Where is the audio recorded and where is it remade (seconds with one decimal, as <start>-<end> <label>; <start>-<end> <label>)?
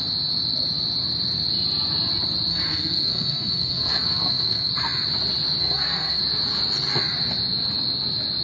0.0-2.5 recorded; 2.5-4.7 remade; 4.7-5.6 recorded; 5.6-6.2 remade; 6.2-8.4 recorded